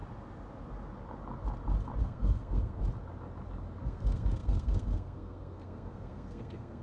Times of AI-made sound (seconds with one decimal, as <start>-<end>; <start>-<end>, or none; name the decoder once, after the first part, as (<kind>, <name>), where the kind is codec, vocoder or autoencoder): 2.0-2.8 (codec, SNAC); 3.8-6.8